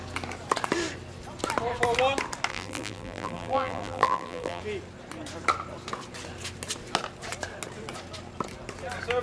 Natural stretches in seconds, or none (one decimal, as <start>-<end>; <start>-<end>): 0.0-2.5; 4.6-9.2